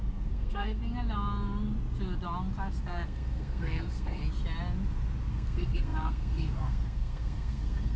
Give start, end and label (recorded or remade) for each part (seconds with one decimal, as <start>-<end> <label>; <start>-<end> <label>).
0.0-0.8 remade; 0.8-2.8 recorded; 2.8-4.2 remade; 4.2-5.3 recorded; 5.3-8.0 remade